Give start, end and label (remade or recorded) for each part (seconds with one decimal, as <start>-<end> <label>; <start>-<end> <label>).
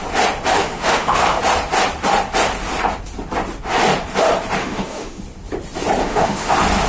0.0-0.5 recorded; 0.5-1.4 remade; 1.4-4.6 recorded; 4.6-5.2 remade; 5.2-6.0 recorded; 6.0-6.5 remade; 6.5-6.9 recorded